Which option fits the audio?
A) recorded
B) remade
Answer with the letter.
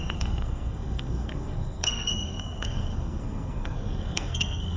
B